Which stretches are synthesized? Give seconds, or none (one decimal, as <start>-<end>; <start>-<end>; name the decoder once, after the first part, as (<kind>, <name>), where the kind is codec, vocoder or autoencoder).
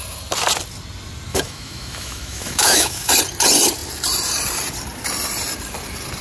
1.3-3.1 (autoencoder, DAC-VAE)